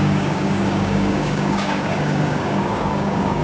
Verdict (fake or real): fake